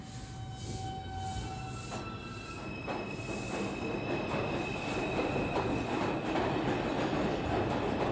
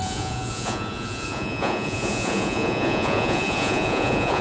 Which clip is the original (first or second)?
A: first